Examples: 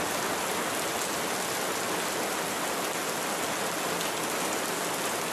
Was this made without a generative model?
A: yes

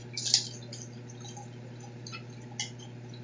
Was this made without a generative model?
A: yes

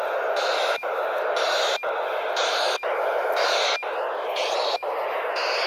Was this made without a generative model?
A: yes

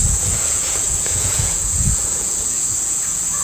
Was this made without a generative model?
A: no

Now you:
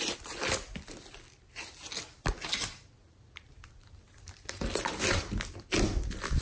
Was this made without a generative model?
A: yes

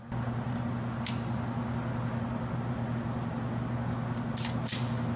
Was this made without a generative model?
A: yes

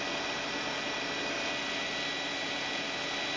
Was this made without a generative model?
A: yes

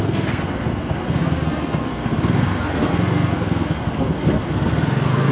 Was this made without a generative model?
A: no